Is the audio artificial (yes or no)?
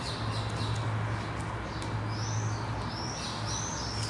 no